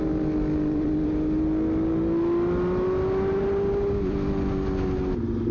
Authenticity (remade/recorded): recorded